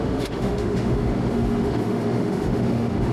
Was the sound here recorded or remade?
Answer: remade